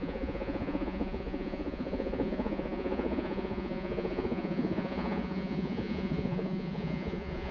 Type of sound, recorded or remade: remade